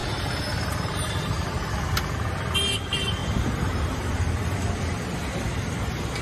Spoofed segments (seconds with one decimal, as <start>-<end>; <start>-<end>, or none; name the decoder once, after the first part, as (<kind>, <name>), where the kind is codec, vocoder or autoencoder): 0.0-0.7 (vocoder, BigVGAN v2); 3.2-4.1